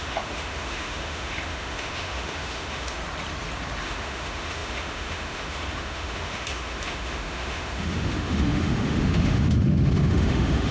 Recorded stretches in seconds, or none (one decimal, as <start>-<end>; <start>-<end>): 3.0-3.8